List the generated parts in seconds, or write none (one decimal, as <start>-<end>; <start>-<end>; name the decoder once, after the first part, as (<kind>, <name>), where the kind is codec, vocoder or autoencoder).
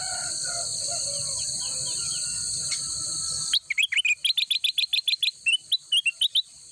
0.7-1.4 (vocoder, BigVGAN v2); 3.1-3.8